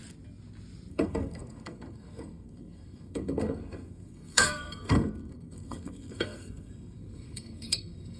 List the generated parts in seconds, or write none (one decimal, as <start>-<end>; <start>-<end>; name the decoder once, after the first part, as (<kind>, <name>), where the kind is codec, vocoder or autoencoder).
0.9-8.2 (codec, SNAC)

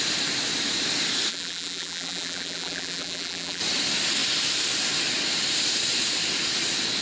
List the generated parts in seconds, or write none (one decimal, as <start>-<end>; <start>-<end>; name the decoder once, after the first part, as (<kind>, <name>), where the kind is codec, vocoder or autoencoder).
1.3-3.6 (vocoder, BigVGAN v2)